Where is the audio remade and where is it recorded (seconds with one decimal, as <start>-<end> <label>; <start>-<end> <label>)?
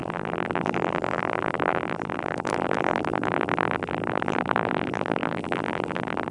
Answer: 0.0-6.3 remade